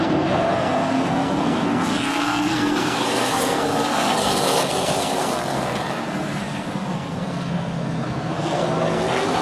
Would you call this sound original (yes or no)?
no